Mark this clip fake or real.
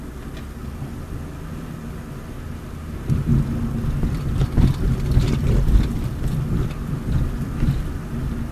real